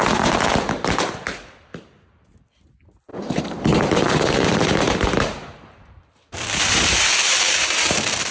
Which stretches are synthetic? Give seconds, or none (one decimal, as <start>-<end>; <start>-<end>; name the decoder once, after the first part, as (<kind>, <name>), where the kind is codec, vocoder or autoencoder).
3.1-8.3 (vocoder, BigVGAN v2)